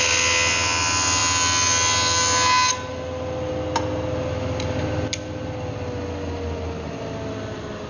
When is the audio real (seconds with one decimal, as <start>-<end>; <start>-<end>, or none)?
0.0-7.9